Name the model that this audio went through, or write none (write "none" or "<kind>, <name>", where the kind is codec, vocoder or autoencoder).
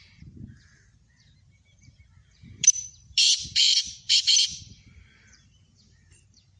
vocoder, BigVGAN v2